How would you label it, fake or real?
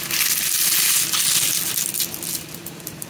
real